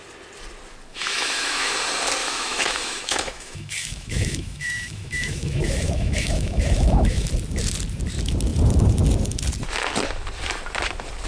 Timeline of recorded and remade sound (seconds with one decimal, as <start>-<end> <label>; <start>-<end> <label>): 0.0-0.9 recorded; 0.9-1.7 remade; 1.7-2.2 recorded; 2.2-7.3 remade; 7.3-11.3 recorded